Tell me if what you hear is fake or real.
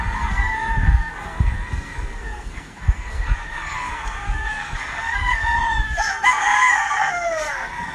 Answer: fake